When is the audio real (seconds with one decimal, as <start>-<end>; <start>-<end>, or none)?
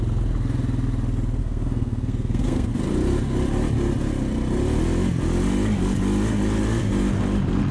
0.0-1.4; 2.7-7.7